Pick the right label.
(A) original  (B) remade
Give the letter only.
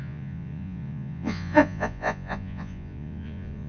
B